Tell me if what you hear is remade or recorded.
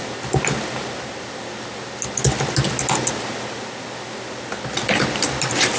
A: recorded